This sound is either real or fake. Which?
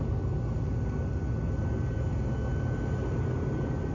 real